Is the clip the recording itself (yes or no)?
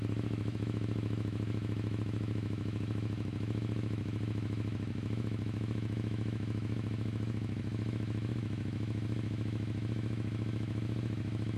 no